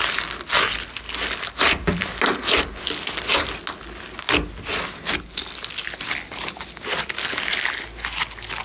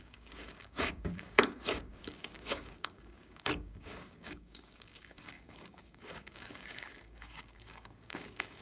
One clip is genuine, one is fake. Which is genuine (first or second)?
first